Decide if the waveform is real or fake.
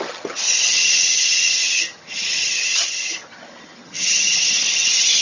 fake